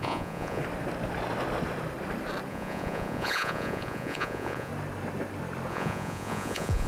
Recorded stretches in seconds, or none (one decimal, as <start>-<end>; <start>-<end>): 0.6-2.5; 4.7-5.7